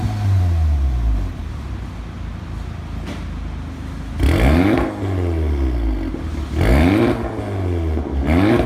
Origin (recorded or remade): recorded